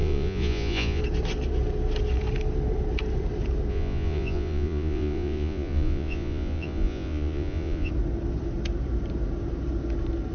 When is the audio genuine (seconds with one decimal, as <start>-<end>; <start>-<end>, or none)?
1.0-3.7; 7.9-10.3